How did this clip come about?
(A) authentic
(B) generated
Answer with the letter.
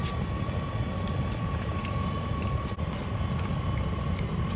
A